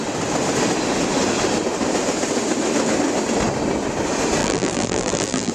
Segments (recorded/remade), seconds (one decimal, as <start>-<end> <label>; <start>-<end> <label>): 0.0-4.4 recorded; 4.4-5.5 remade